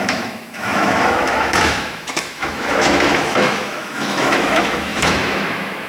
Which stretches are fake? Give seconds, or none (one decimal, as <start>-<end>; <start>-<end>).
0.0-5.9